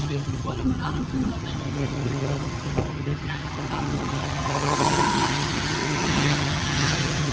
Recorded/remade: remade